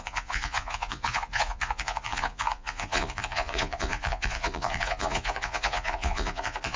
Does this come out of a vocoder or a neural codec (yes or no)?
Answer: yes